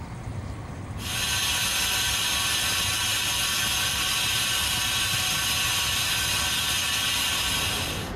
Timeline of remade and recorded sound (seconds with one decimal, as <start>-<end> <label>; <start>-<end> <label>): 0.0-8.2 recorded